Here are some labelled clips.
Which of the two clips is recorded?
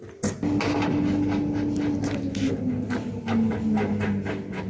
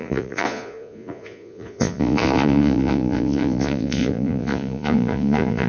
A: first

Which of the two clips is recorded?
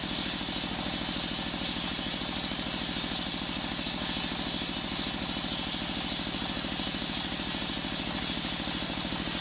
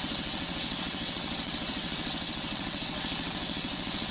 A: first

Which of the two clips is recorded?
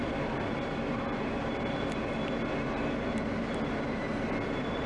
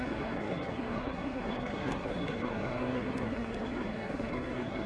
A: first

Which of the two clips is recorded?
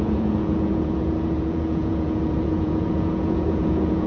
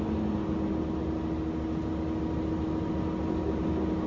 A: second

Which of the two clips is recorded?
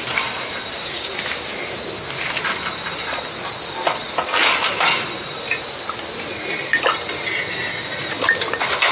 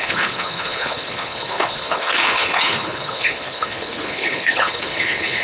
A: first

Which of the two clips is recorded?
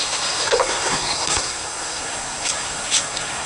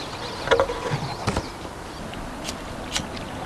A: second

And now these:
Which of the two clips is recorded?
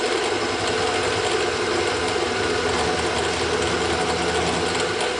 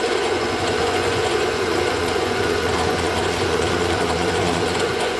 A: first